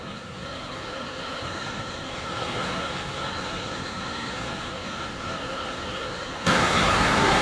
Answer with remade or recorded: remade